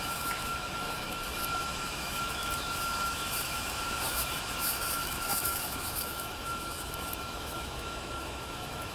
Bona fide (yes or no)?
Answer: no